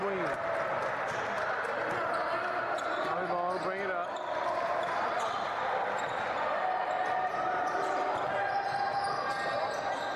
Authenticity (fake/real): real